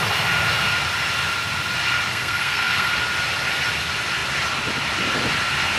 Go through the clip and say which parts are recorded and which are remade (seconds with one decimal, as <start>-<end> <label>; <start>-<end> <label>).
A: 0.0-2.1 recorded; 2.1-2.9 remade; 2.9-5.8 recorded